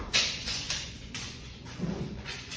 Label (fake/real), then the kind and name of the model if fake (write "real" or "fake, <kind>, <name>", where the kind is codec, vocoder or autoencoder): fake, vocoder, Vocos